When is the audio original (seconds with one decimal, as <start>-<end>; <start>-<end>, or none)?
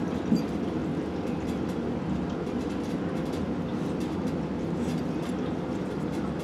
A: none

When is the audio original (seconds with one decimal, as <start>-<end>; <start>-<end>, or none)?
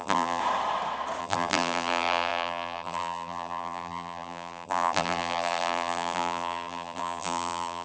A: 0.4-1.2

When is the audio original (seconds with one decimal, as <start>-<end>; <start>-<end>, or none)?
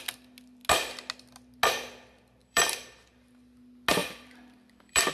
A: 0.0-2.4; 2.9-4.0